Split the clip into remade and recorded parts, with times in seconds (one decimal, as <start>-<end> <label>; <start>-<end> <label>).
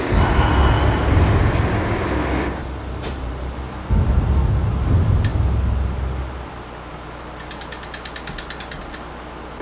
0.0-2.6 recorded; 2.6-3.6 remade; 3.6-9.6 recorded